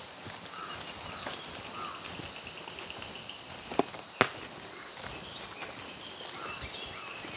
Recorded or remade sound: recorded